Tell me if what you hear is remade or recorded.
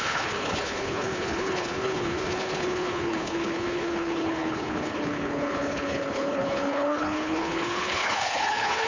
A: remade